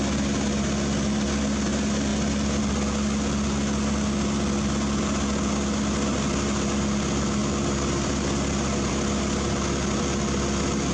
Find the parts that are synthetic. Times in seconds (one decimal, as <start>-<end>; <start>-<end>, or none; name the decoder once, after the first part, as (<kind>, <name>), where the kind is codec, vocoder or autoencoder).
7.4-8.9 (vocoder, BigVGAN v2)